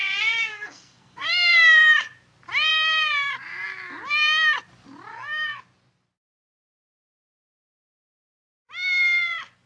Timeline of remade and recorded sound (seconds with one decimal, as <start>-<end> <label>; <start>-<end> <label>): 0.0-0.5 recorded; 0.5-1.6 remade; 1.6-5.1 recorded; 5.1-5.6 remade; 5.6-9.7 recorded